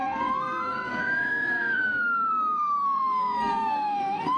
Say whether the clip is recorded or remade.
remade